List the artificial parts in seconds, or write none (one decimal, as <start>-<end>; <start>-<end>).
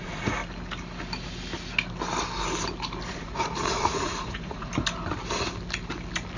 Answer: 0.0-0.4; 3.1-4.7